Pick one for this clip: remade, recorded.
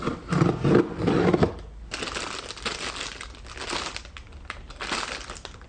recorded